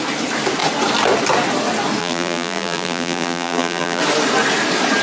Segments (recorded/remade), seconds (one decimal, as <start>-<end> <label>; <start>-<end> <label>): 0.0-2.0 recorded; 2.0-4.0 remade; 4.0-5.0 recorded